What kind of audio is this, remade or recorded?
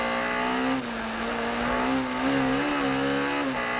recorded